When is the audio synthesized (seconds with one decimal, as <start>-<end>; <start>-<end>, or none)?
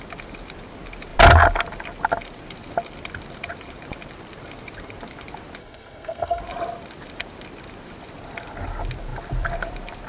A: 5.6-6.4